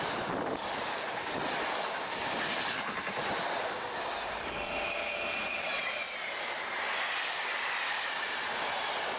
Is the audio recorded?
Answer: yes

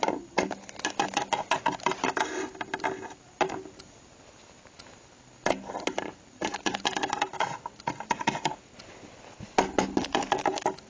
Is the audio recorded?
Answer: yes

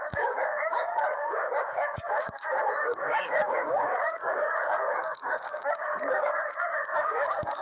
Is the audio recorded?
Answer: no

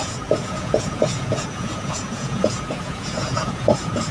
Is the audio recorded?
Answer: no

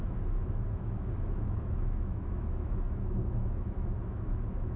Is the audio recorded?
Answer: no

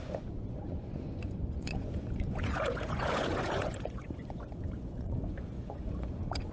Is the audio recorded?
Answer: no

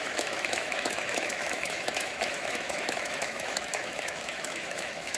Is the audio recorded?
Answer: no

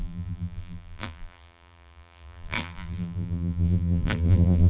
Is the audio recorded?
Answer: no